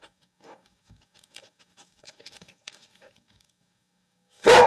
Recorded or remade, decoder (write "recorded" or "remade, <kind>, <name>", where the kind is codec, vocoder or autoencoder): remade, codec, DAC